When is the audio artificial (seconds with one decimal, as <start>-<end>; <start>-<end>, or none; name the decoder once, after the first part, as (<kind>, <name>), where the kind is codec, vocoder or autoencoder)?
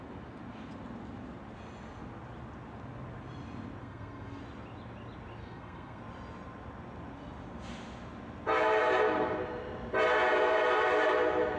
3.8-4.4 (codec, SNAC); 5.4-6.0